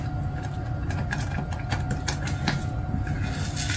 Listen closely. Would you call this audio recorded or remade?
recorded